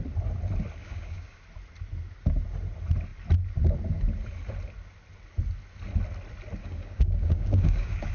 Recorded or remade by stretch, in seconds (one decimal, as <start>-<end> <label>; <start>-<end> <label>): 0.0-0.8 recorded; 0.8-1.4 remade; 1.4-6.6 recorded; 6.6-8.1 remade

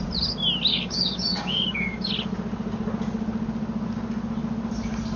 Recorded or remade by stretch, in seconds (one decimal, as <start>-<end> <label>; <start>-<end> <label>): 0.0-0.7 recorded; 0.7-2.1 remade; 2.1-5.2 recorded

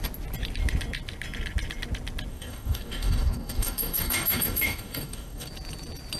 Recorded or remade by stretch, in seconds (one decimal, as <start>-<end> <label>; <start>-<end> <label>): 0.0-2.3 recorded; 2.3-5.5 remade; 5.5-6.2 recorded

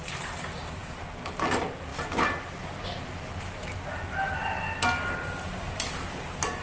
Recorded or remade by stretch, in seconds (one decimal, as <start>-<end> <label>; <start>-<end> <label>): 0.0-6.6 recorded

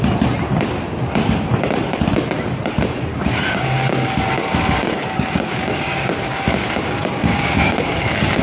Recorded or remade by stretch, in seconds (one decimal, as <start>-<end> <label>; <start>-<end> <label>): 0.0-3.1 recorded; 3.1-8.4 remade

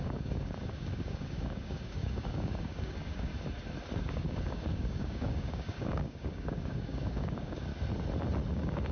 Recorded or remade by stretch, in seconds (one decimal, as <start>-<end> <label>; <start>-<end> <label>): 0.0-3.3 remade; 3.3-3.9 recorded; 3.9-7.7 remade; 7.7-8.5 recorded; 8.5-8.9 remade

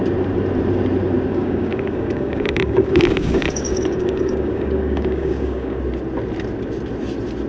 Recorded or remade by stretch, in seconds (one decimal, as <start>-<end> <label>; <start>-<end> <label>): 0.0-1.3 recorded; 1.3-5.8 remade; 5.8-7.5 recorded